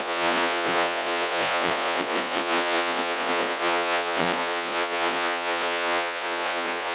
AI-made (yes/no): yes